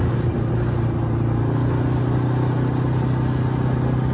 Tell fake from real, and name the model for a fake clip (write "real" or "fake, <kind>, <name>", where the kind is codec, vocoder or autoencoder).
real